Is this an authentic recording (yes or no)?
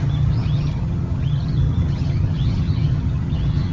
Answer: no